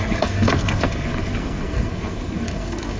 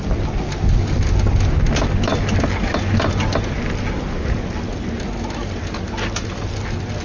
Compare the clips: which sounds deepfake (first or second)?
first